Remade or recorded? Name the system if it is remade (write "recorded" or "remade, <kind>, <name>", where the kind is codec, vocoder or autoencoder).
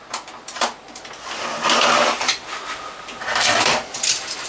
remade, vocoder, BigVGAN v2